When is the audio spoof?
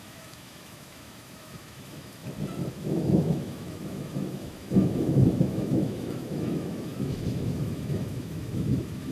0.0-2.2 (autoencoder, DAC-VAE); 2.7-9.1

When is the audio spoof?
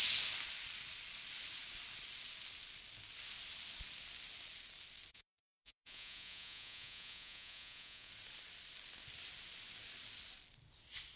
5.1-8.1 (vocoder, Vocos)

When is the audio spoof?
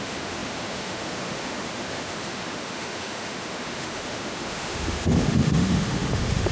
0.0-6.5 (autoencoder, DAC-VAE)